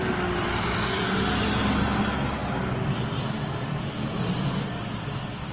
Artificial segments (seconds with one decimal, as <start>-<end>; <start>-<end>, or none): none